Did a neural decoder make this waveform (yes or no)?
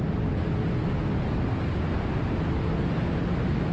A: no